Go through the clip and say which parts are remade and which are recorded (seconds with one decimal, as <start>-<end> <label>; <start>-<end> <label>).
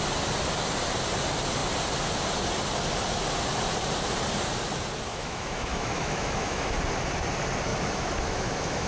0.0-5.1 recorded; 5.1-6.8 remade; 6.8-7.7 recorded; 7.7-8.9 remade